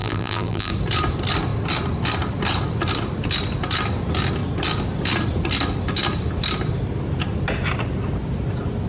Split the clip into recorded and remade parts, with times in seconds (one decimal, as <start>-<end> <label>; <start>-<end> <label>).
0.0-0.7 remade; 0.7-8.9 recorded

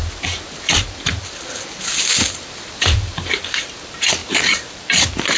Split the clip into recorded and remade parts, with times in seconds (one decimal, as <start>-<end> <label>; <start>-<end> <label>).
0.0-0.7 recorded; 0.7-1.1 remade; 1.1-2.7 recorded; 2.7-5.4 remade